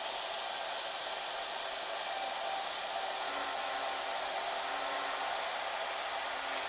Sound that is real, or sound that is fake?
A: real